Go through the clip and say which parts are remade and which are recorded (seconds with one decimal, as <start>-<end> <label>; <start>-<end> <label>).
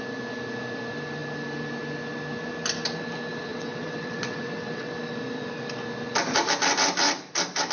0.0-3.5 recorded; 3.5-4.9 remade; 4.9-7.7 recorded